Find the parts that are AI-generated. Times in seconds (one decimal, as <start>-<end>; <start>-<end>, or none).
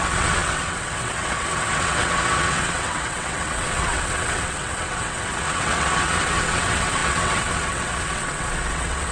0.0-9.1